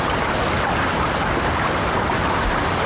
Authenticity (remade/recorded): recorded